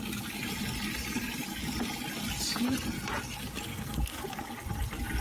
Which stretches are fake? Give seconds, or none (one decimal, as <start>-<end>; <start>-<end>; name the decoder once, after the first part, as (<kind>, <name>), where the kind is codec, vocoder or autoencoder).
3.7-4.2 (codec, SNAC)